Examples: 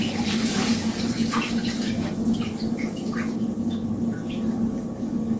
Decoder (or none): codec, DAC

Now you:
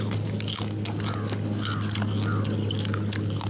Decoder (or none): none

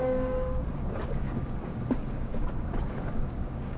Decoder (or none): codec, DAC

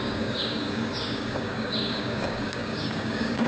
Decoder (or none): codec, DAC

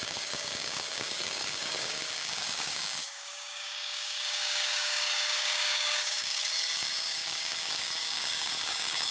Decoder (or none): codec, DAC